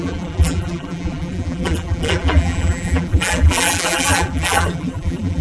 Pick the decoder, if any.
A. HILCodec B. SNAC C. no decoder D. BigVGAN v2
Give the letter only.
D